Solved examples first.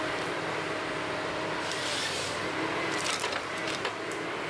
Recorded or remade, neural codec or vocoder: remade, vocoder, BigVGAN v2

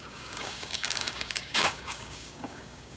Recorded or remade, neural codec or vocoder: remade, codec, DAC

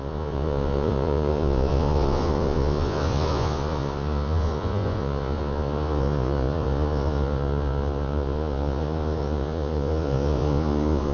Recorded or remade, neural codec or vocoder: remade, vocoder, Vocos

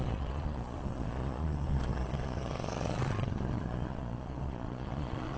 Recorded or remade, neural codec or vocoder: remade, vocoder, Vocos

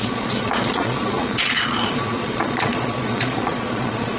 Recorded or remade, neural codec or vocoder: remade, vocoder, Vocos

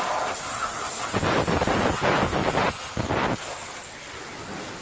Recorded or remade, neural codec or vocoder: recorded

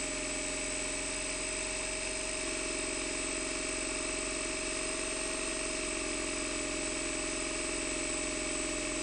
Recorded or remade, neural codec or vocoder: recorded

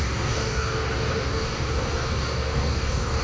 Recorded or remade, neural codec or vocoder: remade, codec, DAC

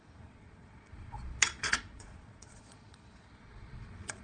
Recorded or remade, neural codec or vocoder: remade, vocoder, Vocos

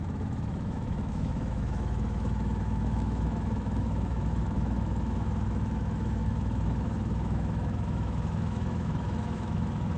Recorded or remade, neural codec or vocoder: remade, autoencoder, DAC-VAE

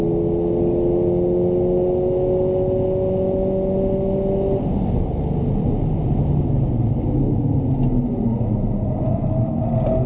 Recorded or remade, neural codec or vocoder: recorded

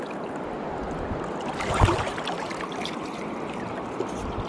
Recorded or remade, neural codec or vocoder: recorded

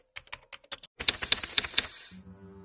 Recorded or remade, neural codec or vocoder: recorded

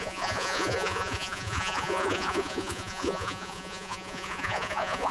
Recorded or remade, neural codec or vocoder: remade, vocoder, Vocos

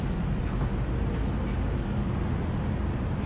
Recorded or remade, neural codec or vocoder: recorded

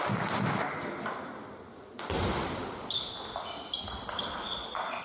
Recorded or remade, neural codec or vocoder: recorded